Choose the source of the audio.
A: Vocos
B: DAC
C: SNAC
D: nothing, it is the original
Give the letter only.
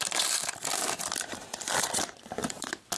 D